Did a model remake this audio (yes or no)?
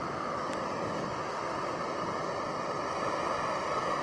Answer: no